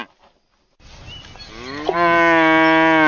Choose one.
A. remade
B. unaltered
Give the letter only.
B